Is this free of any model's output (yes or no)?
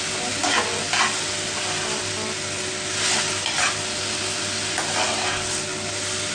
yes